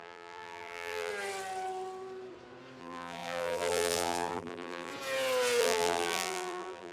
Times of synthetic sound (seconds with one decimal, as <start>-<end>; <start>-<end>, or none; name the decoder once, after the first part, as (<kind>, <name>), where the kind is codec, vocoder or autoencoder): 0.0-1.1 (vocoder, BigVGAN v2); 2.8-4.9; 5.6-6.9

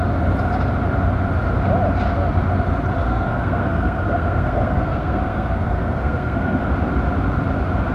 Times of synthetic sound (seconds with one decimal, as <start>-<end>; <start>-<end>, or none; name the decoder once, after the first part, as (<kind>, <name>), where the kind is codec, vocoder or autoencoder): 3.0-6.6 (codec, SNAC)

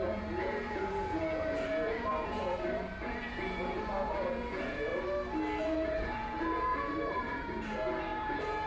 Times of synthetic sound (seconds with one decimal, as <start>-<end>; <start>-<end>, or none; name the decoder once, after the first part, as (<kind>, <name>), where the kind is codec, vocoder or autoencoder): 0.0-4.9 (vocoder, Vocos); 5.6-8.7

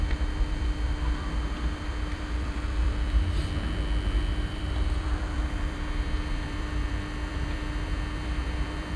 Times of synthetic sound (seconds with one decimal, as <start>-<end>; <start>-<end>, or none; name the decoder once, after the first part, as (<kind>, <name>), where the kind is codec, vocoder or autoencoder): 0.0-3.4 (vocoder, BigVGAN v2); 4.3-9.0

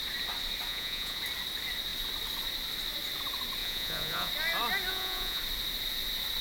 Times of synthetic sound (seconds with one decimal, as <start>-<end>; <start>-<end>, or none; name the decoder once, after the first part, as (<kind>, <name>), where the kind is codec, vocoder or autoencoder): 0.7-1.2 (vocoder, Vocos); 3.6-4.3; 4.9-5.4